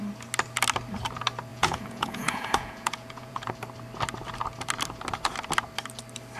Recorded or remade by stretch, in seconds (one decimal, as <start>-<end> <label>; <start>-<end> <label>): 0.0-1.5 recorded; 1.5-3.5 remade; 3.5-6.4 recorded